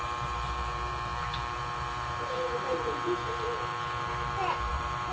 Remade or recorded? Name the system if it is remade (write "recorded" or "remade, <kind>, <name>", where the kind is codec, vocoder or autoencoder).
remade, vocoder, BigVGAN v2